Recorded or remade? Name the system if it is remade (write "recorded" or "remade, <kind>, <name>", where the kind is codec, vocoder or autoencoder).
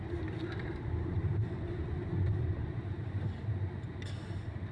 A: recorded